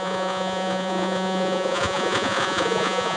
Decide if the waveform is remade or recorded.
remade